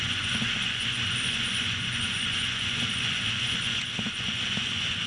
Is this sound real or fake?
fake